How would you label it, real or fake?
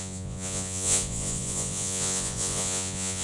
fake